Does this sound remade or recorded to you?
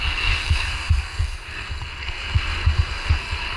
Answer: remade